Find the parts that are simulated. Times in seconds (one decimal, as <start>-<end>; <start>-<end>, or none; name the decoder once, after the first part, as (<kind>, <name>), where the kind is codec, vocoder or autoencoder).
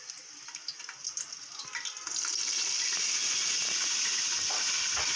3.2-4.3 (vocoder, BigVGAN v2)